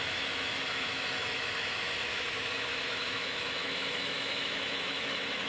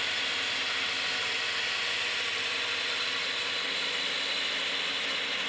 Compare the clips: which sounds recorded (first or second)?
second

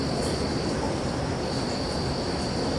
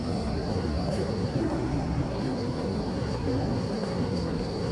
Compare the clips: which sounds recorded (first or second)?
first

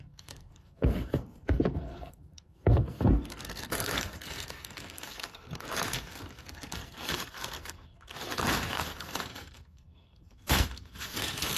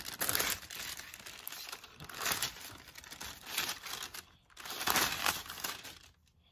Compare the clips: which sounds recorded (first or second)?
second